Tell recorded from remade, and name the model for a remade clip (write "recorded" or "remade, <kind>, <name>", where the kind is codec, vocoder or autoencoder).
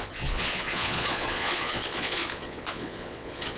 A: remade, vocoder, Vocos